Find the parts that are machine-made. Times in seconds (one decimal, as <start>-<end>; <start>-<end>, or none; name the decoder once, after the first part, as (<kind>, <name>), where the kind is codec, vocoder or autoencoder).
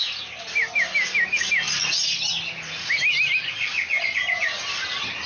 none